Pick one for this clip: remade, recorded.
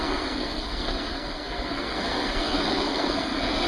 remade